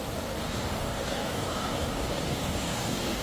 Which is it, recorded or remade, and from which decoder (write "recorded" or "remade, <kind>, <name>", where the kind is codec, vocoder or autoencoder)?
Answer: remade, codec, DAC